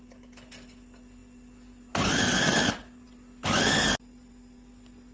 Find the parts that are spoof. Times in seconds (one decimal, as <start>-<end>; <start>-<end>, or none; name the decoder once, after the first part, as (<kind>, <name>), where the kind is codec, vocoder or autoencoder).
none